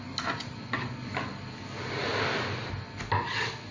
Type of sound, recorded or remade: recorded